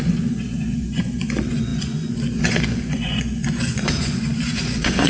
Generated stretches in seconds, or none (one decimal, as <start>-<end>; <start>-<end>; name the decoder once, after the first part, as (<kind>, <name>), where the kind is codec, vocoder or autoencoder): 0.0-5.1 (vocoder, Vocos)